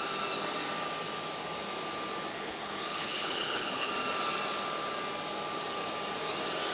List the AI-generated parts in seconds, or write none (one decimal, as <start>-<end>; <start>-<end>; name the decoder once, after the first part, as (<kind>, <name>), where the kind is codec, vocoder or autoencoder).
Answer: 2.3-3.9 (codec, HILCodec)